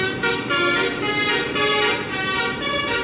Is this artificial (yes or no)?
no